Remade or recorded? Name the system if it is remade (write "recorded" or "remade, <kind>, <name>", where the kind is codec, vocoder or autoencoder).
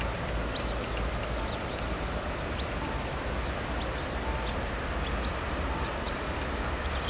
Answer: recorded